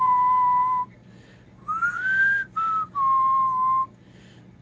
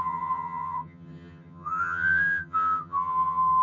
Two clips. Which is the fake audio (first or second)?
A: second